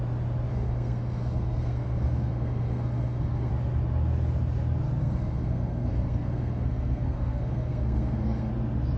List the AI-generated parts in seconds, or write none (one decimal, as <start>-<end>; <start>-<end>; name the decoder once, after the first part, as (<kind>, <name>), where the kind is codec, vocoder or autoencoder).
0.5-3.5 (codec, SNAC); 5.0-8.5